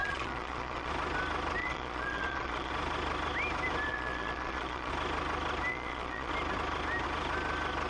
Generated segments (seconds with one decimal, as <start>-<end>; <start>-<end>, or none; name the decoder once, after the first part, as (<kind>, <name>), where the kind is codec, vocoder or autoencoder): 0.0-0.9 (vocoder, Vocos); 1.6-2.7; 3.9-4.9; 5.7-6.3